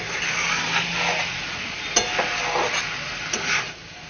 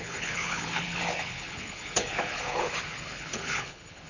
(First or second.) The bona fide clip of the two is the first